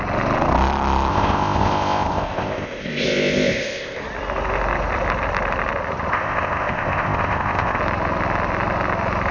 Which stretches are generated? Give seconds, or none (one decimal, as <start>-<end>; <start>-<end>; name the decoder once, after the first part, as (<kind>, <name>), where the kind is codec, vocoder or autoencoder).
1.1-4.0 (codec, ZipCodec); 6.1-7.8